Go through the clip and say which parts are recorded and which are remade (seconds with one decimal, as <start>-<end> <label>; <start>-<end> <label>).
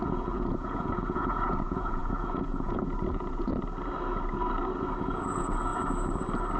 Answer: 0.0-3.5 remade; 3.5-5.0 recorded; 5.0-5.7 remade; 5.7-6.6 recorded